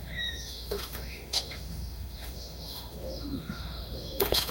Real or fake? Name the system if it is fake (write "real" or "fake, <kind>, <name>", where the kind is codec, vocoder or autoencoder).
fake, autoencoder, DAC-VAE